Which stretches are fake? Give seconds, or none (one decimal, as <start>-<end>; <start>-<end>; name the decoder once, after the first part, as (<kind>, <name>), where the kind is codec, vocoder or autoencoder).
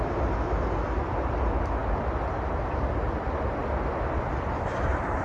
3.6-5.2 (vocoder, BigVGAN v2)